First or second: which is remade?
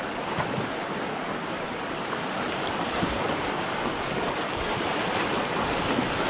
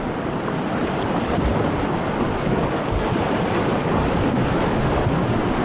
first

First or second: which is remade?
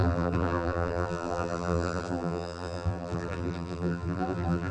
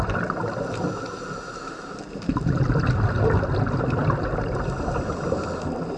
first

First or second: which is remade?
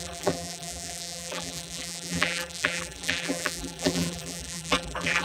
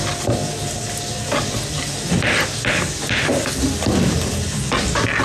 first